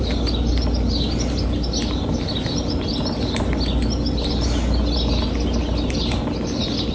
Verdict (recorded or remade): recorded